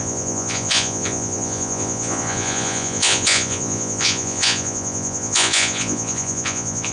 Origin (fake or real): fake